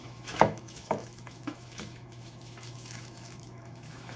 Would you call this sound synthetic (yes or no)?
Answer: yes